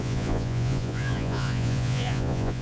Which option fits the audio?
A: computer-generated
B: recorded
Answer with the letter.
A